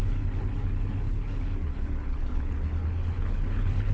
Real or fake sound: fake